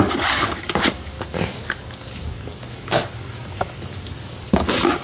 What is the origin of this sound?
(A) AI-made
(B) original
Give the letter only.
A